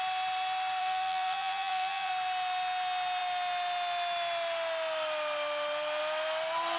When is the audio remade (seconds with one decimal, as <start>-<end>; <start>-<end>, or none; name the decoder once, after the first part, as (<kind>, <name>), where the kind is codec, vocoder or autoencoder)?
0.8-2.1 (vocoder, BigVGAN v2)